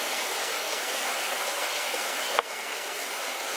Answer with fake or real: fake